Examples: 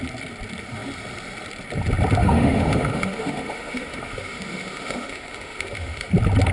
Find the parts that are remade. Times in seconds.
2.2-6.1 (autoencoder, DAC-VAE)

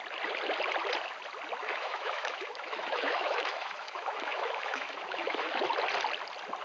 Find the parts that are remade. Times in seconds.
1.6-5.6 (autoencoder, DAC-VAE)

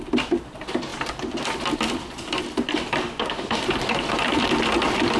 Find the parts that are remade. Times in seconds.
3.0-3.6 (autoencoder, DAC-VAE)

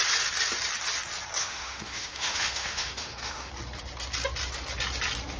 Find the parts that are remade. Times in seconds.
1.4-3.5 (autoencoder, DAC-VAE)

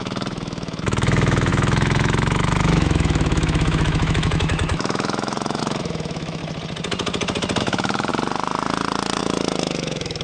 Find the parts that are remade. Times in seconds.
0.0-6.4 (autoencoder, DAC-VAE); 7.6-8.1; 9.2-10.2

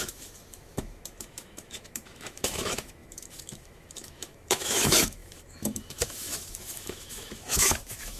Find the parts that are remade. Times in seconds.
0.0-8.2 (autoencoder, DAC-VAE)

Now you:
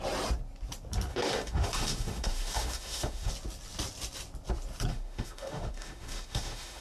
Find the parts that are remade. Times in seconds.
1.1-3.3 (autoencoder, DAC-VAE); 4.9-6.8